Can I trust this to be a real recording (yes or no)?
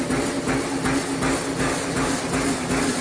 yes